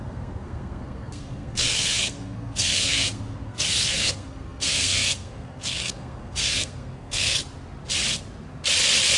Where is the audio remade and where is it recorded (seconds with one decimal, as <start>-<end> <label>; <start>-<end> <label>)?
0.0-7.4 remade; 7.4-9.2 recorded